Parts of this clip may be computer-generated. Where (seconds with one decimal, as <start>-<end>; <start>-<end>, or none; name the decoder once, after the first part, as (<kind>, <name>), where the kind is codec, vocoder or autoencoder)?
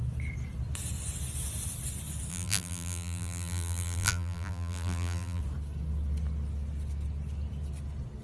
2.3-5.4 (vocoder, BigVGAN v2)